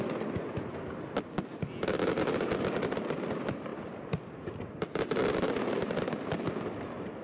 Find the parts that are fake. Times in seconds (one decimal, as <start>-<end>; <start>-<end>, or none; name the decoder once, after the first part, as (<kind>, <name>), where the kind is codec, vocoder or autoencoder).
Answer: none